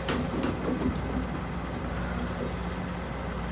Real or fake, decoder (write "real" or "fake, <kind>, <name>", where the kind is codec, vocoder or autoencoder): real